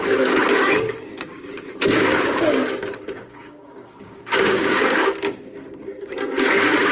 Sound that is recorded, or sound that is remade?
remade